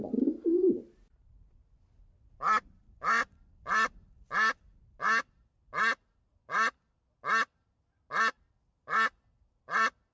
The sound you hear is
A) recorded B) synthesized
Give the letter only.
A